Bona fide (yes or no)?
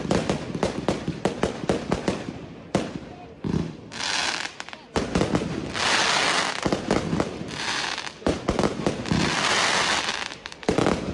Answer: yes